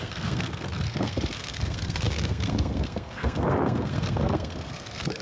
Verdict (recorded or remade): remade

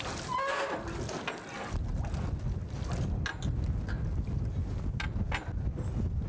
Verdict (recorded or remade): recorded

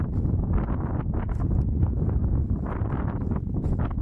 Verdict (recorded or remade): recorded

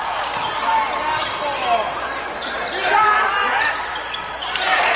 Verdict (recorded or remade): recorded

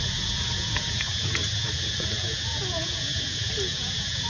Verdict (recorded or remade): remade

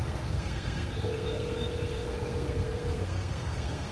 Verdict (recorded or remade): remade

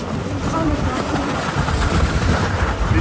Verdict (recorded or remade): remade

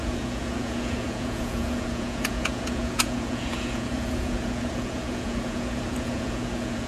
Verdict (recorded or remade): remade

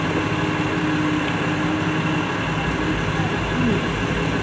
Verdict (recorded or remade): recorded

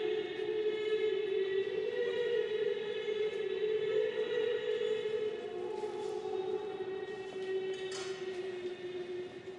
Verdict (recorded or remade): recorded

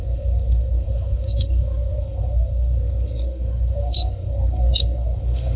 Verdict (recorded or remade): remade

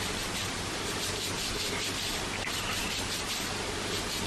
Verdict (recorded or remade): remade